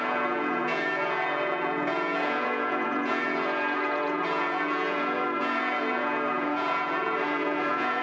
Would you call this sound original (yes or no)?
no